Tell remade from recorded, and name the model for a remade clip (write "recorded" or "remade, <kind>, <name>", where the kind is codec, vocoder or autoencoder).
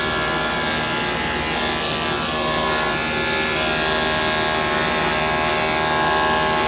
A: recorded